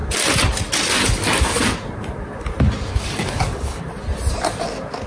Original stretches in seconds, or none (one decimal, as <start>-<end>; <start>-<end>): 0.0-2.9; 3.8-5.1